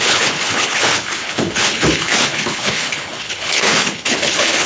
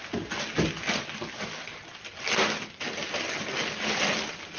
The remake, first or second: first